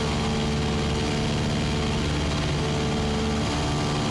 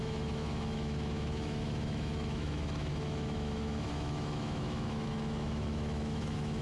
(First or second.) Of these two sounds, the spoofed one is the second